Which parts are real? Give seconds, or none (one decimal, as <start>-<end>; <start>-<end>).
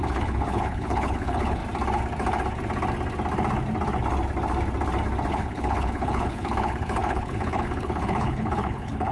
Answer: 1.6-5.3